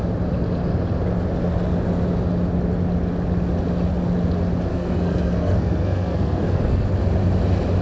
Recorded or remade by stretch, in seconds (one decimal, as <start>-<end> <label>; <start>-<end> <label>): 0.0-4.7 recorded; 4.7-6.9 remade; 6.9-7.8 recorded